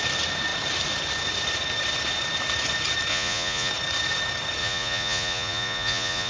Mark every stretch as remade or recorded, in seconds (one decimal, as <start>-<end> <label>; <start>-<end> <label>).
0.0-3.1 recorded; 3.1-3.7 remade; 3.7-4.6 recorded; 4.6-6.3 remade